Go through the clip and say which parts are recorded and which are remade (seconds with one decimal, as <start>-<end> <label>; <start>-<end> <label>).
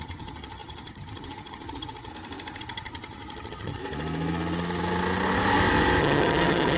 0.0-2.1 remade; 2.1-2.6 recorded; 2.6-3.8 remade; 3.8-6.0 recorded; 6.0-6.8 remade